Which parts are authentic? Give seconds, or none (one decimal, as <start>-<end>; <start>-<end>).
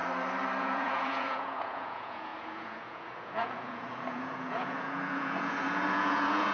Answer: 0.0-0.6